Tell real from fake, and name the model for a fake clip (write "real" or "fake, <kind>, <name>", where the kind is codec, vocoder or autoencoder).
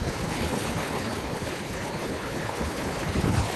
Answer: fake, codec, HILCodec